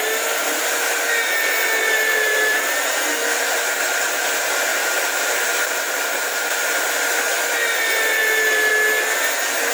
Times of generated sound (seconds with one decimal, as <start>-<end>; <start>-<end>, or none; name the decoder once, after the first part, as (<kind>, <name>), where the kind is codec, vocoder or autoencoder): 2.1-2.7 (vocoder, BigVGAN v2); 4.7-7.2